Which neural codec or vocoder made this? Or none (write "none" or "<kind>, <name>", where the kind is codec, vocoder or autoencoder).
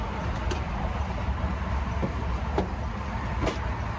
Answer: none